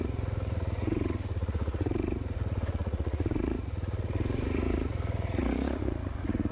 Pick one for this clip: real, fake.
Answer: fake